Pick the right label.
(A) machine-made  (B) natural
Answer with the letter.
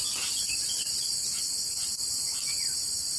B